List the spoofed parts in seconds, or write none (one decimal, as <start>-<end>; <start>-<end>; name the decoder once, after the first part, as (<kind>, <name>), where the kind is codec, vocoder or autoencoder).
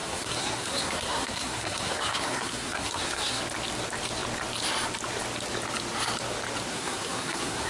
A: 0.0-3.4 (codec, SNAC); 6.7-7.7